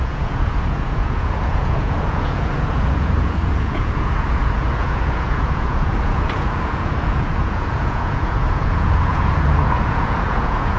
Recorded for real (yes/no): no